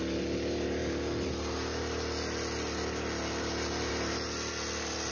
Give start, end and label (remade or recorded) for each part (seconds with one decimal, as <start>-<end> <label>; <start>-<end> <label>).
0.0-5.1 recorded